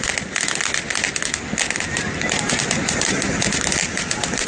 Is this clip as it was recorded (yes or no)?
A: yes